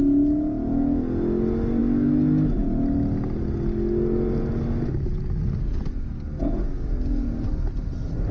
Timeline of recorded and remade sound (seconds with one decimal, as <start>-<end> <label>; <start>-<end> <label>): 0.0-8.3 recorded